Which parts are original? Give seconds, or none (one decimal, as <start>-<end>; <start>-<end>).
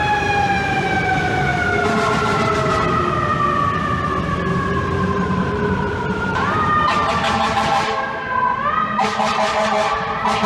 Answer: 1.5-2.2; 3.3-4.7; 7.0-8.5